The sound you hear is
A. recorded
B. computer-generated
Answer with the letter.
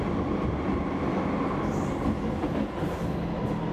A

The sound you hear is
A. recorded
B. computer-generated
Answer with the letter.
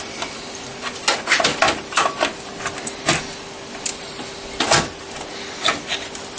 A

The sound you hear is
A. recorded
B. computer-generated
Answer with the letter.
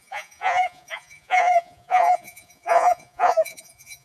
B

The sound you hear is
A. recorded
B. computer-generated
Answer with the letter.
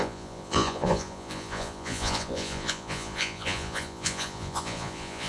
B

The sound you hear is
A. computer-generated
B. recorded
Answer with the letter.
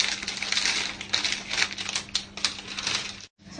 B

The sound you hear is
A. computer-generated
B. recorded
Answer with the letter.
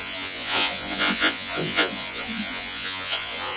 A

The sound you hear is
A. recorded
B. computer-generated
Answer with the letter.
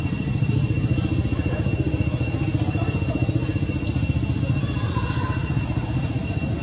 A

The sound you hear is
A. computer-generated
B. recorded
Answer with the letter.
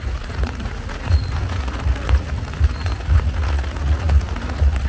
A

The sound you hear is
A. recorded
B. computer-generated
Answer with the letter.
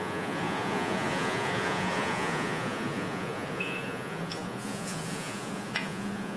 B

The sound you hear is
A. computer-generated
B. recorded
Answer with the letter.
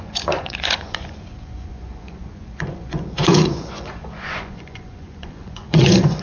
A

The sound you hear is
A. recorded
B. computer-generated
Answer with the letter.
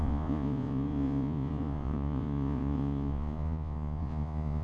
B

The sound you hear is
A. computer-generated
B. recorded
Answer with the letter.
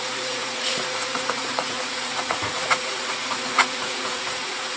A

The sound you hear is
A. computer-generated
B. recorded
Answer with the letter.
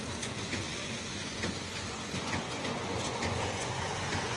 A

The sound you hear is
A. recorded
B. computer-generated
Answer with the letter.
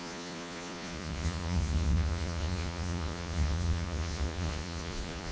B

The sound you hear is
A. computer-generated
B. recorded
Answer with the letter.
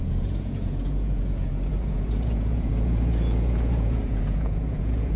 A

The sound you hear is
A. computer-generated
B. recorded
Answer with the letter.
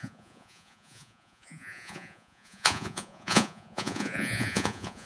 A